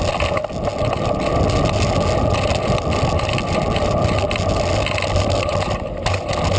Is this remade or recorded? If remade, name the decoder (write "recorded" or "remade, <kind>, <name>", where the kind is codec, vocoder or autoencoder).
recorded